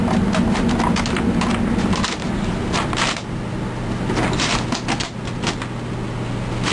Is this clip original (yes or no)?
yes